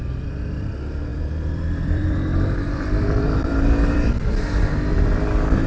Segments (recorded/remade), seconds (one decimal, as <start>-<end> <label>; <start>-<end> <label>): 0.0-1.1 recorded; 1.1-4.4 remade; 4.4-5.7 recorded